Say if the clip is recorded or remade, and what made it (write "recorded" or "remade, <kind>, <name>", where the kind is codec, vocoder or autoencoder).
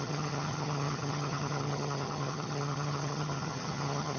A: remade, vocoder, HiFi-GAN